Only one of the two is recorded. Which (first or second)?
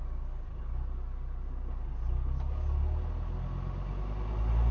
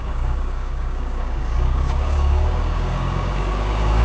first